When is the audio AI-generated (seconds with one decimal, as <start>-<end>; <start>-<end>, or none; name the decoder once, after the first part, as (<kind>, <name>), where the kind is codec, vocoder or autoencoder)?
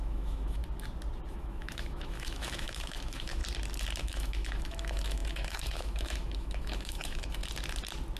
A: 0.0-0.6 (autoencoder, DAC-VAE); 1.3-3.4; 4.0-7.4